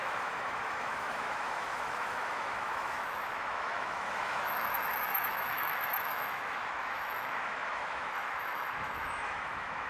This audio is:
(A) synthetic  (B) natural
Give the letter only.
A